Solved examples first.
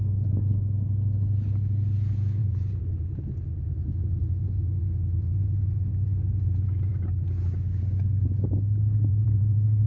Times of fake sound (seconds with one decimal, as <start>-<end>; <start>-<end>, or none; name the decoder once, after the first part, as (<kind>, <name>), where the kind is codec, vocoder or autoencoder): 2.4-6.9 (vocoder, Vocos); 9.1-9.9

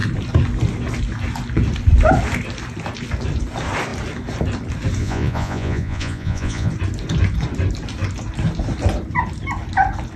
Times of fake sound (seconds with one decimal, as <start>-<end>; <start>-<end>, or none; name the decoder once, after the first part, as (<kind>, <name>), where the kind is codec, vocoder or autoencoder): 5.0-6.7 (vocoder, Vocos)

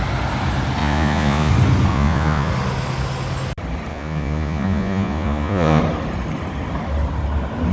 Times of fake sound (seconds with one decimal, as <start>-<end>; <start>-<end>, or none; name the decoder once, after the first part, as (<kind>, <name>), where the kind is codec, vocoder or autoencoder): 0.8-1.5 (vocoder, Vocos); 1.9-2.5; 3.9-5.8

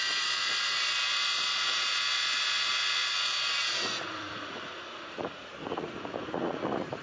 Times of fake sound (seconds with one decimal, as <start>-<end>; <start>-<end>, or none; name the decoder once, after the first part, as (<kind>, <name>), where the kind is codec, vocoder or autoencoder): 0.0-7.0 (vocoder, Vocos)